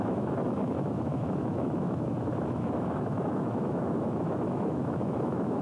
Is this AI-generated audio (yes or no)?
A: yes